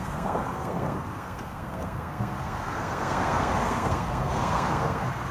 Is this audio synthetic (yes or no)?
yes